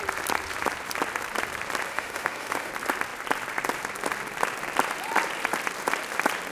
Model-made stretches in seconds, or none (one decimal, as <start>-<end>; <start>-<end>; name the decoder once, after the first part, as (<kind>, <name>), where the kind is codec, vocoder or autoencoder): 1.9-2.7 (autoencoder, DAC-VAE)